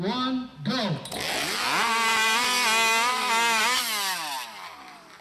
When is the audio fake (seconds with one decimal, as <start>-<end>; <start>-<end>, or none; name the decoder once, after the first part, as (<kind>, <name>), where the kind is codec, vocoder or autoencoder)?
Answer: none